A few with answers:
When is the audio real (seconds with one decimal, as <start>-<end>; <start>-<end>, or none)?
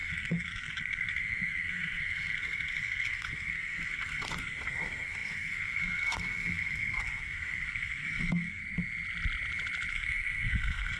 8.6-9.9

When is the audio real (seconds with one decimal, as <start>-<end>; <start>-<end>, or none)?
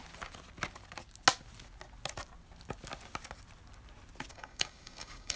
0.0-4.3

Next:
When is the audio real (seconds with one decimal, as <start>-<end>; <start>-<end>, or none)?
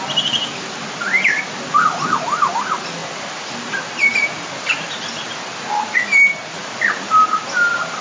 0.0-3.0; 4.5-8.0